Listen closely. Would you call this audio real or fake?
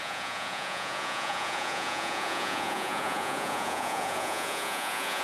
fake